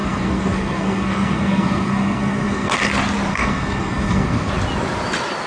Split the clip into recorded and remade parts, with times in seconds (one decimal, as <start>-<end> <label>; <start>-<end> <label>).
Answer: 0.0-2.9 remade; 2.9-3.3 recorded; 3.3-4.5 remade; 4.5-5.5 recorded